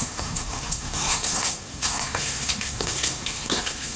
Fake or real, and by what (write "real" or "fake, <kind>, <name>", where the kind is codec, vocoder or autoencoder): fake, codec, SNAC